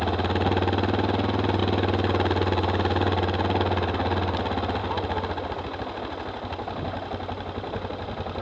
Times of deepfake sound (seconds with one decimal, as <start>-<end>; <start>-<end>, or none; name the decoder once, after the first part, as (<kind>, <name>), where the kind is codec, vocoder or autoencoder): none